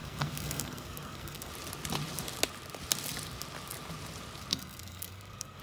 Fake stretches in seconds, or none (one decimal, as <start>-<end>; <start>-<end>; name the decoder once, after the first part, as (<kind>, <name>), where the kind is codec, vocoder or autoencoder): 0.0-1.5 (codec, SNAC); 4.5-5.6